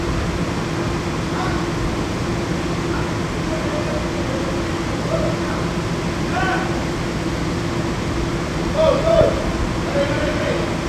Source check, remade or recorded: recorded